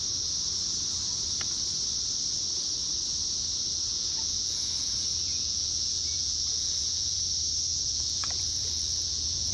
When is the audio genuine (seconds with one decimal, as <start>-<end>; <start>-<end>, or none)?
0.0-3.9; 7.2-7.7